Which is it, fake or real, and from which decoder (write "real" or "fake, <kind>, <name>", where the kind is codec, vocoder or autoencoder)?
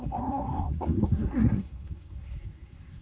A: fake, codec, SNAC